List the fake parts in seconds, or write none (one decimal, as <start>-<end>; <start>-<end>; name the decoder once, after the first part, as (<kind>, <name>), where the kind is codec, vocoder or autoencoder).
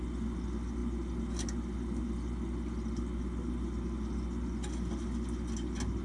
none